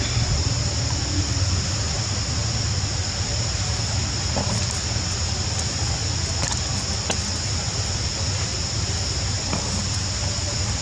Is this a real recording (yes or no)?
yes